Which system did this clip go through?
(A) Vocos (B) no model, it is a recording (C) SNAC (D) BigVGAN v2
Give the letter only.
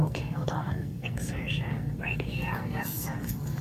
C